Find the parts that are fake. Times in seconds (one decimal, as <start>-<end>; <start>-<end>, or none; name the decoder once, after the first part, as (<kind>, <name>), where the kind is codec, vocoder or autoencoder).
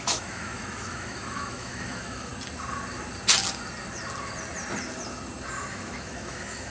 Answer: 0.0-2.3 (autoencoder, DAC-VAE); 5.7-6.7